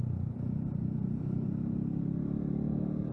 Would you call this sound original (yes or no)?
yes